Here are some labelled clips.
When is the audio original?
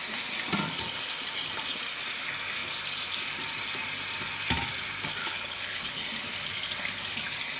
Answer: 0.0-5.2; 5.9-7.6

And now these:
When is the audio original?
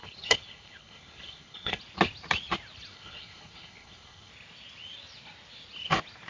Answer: 1.8-2.9; 4.3-6.3